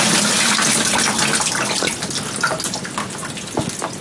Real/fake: real